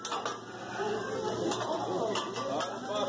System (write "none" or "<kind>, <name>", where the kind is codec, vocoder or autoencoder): none